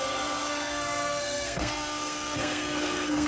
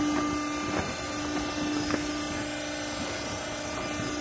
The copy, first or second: first